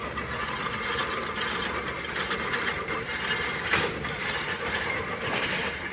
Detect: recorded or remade recorded